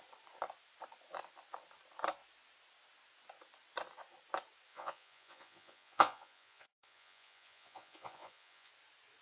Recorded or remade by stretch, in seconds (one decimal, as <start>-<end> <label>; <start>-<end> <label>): 0.0-4.7 recorded; 4.7-8.7 remade; 8.7-9.2 recorded